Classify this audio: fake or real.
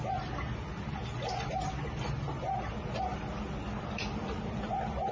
real